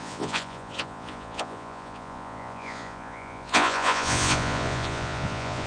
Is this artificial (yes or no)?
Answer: yes